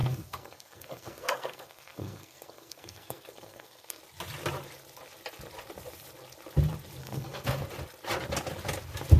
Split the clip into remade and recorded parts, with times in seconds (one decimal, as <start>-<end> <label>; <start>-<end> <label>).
0.0-4.0 remade; 4.0-7.0 recorded; 7.0-7.6 remade; 7.6-9.2 recorded